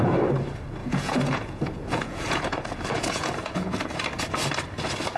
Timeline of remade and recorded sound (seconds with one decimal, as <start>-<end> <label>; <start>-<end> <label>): 0.0-0.8 recorded; 0.8-3.9 remade; 3.9-5.2 recorded